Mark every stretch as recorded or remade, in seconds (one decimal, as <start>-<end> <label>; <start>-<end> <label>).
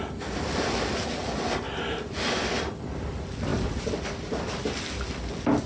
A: 0.0-5.7 recorded